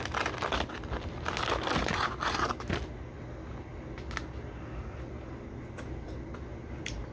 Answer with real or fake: real